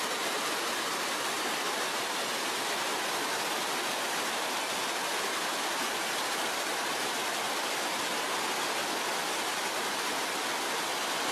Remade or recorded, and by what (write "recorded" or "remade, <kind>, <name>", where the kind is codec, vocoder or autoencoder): recorded